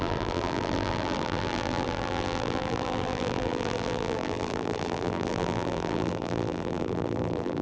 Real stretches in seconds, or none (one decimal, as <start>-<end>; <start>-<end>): none